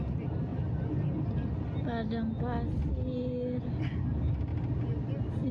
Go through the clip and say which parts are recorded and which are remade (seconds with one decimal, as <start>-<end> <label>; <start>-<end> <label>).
0.0-5.5 recorded